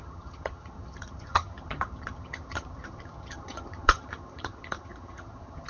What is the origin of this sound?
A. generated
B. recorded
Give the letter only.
A